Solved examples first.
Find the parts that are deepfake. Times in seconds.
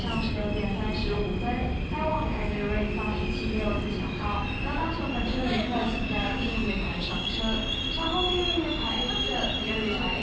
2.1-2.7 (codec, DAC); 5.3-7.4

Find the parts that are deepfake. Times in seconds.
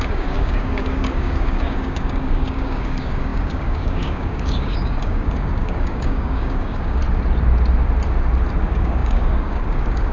0.0-7.0 (codec, DAC); 8.6-10.1